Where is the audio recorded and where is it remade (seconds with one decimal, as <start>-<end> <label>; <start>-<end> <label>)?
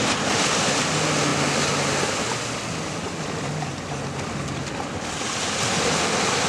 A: 0.0-6.5 recorded